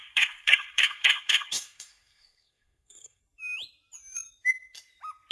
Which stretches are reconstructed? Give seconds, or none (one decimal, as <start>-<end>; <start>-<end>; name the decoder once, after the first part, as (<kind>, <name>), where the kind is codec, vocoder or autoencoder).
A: 0.0-3.2 (codec, SNAC)